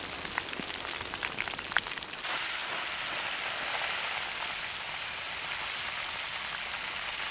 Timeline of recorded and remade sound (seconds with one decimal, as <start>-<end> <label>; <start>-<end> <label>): 0.0-7.3 recorded